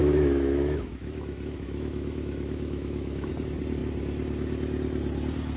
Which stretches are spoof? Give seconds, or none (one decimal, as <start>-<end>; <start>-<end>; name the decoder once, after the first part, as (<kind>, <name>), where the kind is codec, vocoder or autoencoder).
0.0-3.3 (autoencoder, DAC-VAE)